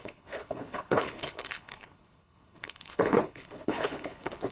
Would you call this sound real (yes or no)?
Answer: no